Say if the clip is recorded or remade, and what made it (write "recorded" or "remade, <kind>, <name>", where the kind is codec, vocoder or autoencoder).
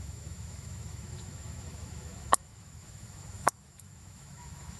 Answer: remade, autoencoder, DAC-VAE